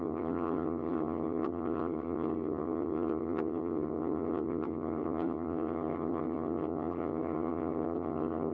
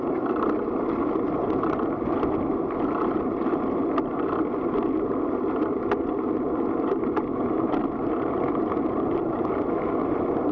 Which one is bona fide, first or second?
second